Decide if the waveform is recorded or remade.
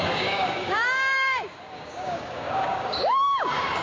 remade